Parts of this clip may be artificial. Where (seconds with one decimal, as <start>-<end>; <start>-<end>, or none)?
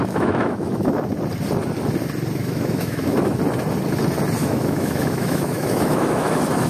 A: 0.0-0.9; 2.4-3.4; 4.4-6.7